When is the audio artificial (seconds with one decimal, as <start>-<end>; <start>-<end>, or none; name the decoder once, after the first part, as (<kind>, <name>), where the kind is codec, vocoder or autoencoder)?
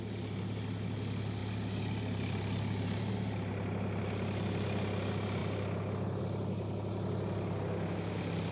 none